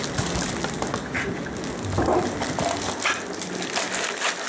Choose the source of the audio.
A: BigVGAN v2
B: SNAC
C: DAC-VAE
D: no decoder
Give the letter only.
D